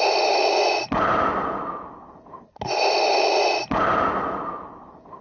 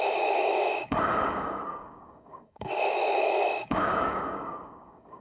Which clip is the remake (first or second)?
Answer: second